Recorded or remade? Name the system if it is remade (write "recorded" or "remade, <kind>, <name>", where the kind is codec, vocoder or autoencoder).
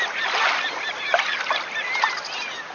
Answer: recorded